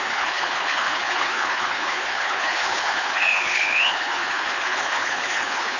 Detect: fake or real fake